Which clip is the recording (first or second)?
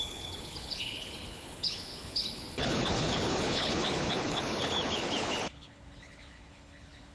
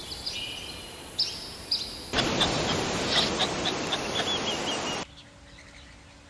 second